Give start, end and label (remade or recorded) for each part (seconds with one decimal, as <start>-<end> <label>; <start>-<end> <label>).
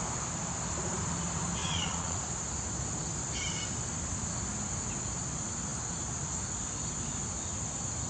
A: 0.0-1.6 recorded; 1.6-2.2 remade; 2.2-8.1 recorded